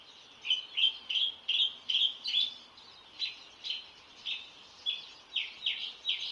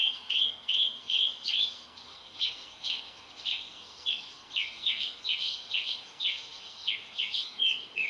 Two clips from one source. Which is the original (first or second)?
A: first